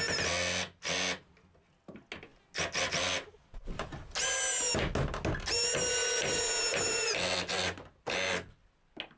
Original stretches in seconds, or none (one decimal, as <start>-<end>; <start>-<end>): 0.0-9.2